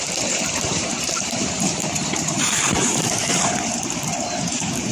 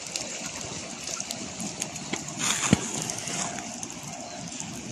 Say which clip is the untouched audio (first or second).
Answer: second